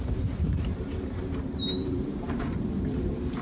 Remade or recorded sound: remade